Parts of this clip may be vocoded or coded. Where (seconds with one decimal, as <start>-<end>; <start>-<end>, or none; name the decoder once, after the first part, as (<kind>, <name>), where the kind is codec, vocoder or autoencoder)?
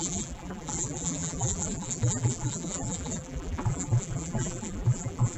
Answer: 0.0-5.4 (vocoder, BigVGAN v2)